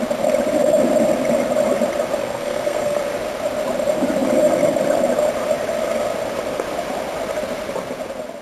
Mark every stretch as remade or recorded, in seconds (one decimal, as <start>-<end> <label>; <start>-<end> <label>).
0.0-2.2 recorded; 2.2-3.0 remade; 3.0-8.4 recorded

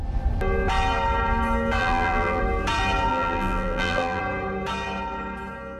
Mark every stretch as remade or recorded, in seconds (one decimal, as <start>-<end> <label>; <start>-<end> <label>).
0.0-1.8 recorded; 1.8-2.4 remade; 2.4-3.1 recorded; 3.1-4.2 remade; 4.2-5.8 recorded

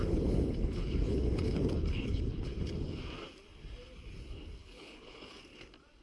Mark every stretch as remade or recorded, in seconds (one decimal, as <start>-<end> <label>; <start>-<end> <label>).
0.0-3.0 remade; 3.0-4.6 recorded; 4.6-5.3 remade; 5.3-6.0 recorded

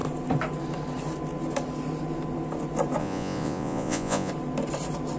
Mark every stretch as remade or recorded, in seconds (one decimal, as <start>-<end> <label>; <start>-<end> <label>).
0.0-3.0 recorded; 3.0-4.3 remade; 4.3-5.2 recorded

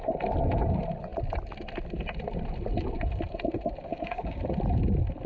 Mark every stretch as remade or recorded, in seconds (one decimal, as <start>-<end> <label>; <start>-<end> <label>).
0.0-3.9 recorded; 3.9-4.4 remade; 4.4-5.3 recorded

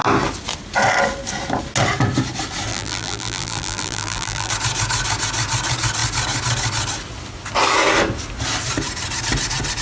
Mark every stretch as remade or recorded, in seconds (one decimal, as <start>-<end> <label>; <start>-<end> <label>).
0.0-2.7 recorded; 2.7-4.5 remade; 4.5-9.8 recorded

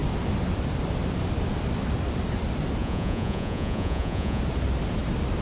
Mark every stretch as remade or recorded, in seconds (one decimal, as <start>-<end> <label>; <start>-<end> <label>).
0.0-2.8 recorded; 2.8-4.4 remade; 4.4-5.4 recorded

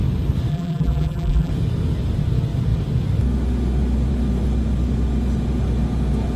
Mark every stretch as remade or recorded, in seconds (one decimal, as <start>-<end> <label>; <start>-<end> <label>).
0.0-0.5 recorded; 0.5-1.5 remade; 1.5-6.4 recorded